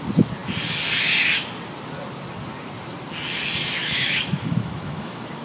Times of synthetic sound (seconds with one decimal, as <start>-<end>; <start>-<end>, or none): 3.8-5.4